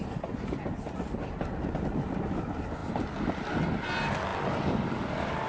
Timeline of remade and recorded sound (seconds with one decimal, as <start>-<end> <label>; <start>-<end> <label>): 0.0-5.5 recorded